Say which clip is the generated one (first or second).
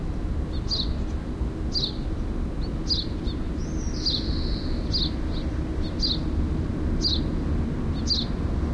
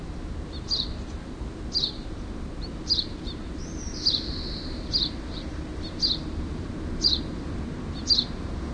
second